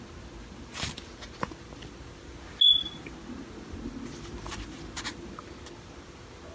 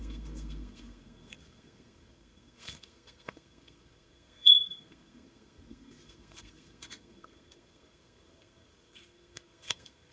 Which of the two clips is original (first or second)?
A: first